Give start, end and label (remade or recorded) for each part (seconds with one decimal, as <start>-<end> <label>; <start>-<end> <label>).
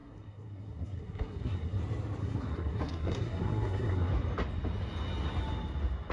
0.0-1.8 remade; 1.8-2.2 recorded; 2.2-4.1 remade; 4.1-6.1 recorded